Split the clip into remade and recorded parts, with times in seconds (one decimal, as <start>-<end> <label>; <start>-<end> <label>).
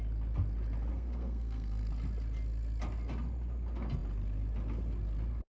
0.0-0.9 recorded; 0.9-1.9 remade; 1.9-5.6 recorded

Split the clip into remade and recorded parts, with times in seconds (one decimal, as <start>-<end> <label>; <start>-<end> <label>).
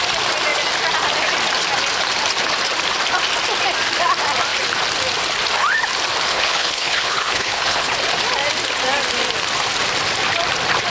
0.0-6.3 recorded; 6.3-7.9 remade; 7.9-10.9 recorded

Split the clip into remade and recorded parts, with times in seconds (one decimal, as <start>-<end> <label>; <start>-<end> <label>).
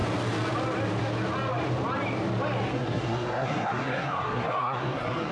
0.0-2.7 recorded; 2.7-5.3 remade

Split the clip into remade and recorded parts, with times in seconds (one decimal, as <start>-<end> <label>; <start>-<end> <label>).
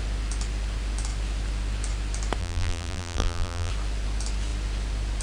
0.0-2.4 recorded; 2.4-3.7 remade; 3.7-5.2 recorded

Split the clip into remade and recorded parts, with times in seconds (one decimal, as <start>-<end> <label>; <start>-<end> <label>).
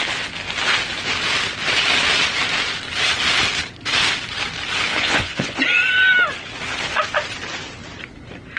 0.0-4.9 recorded; 4.9-5.6 remade; 5.6-8.6 recorded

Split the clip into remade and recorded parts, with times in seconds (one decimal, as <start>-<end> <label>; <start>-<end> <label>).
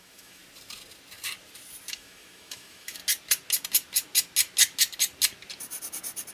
0.0-0.4 remade; 0.4-1.9 recorded; 1.9-3.0 remade; 3.0-6.3 recorded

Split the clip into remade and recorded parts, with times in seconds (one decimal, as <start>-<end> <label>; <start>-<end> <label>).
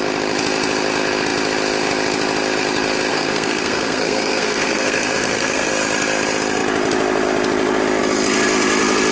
0.0-3.1 recorded; 3.1-5.7 remade; 5.7-9.1 recorded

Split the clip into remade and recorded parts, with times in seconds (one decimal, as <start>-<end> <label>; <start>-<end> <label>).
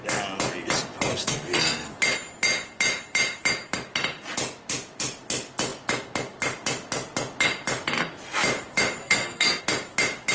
0.0-1.1 recorded; 1.1-1.9 remade; 1.9-9.0 recorded; 9.0-9.6 remade; 9.6-10.3 recorded